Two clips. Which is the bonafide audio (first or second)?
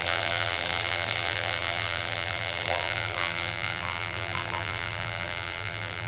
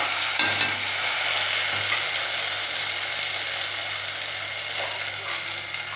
second